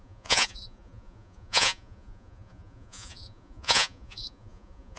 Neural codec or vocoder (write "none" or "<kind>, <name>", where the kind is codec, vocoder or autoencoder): vocoder, Vocos